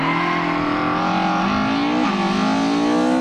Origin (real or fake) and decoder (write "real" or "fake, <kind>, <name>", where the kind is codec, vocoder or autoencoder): real